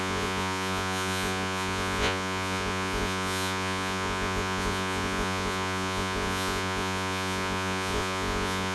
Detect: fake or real fake